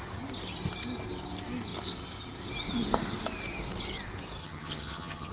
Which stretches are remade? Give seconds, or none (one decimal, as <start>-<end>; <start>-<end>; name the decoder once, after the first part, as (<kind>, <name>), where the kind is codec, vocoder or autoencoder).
4.4-5.3 (vocoder, HiFi-GAN)